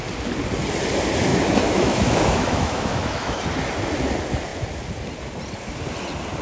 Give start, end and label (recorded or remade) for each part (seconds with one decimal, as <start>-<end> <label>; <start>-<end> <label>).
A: 0.0-1.3 recorded; 1.3-3.4 remade; 3.4-6.4 recorded